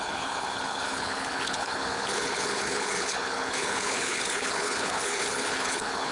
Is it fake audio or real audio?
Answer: fake